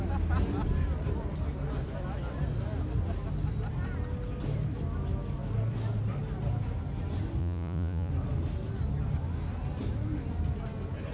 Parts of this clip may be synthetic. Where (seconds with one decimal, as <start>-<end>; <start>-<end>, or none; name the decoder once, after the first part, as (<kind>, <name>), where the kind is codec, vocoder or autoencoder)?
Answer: 7.4-8.1 (vocoder, Vocos)